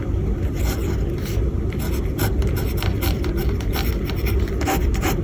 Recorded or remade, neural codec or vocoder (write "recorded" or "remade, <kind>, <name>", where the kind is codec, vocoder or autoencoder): recorded